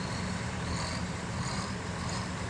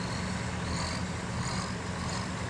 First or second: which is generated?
first